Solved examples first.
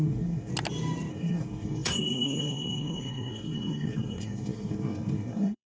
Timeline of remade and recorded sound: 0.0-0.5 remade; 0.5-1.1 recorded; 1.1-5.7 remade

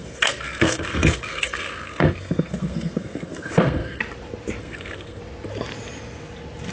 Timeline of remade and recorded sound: 0.0-4.0 remade; 4.0-4.6 recorded; 4.6-5.2 remade; 5.2-6.7 recorded

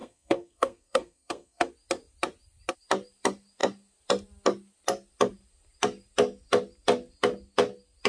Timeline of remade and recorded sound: 0.0-1.7 remade; 1.7-8.1 recorded